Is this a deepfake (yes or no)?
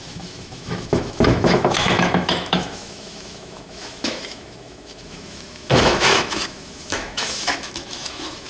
yes